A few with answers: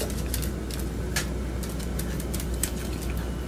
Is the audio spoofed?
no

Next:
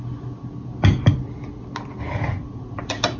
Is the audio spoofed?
no